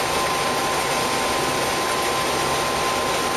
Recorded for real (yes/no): yes